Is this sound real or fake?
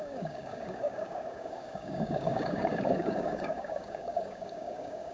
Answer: fake